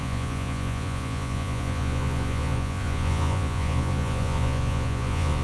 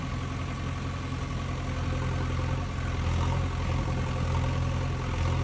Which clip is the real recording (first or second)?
second